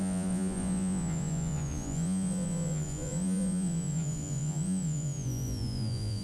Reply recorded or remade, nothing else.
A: remade